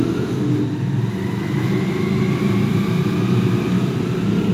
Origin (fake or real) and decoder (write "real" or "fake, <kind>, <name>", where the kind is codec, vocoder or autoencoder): real